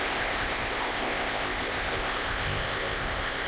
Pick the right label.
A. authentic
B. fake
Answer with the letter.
B